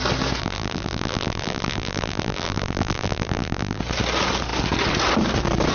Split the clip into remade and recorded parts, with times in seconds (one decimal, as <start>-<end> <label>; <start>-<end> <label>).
0.0-0.4 recorded; 0.4-3.8 remade; 3.8-5.7 recorded